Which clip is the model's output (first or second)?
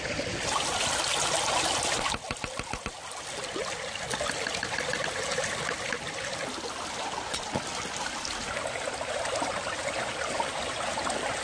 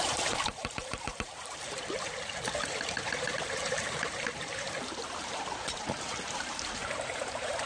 second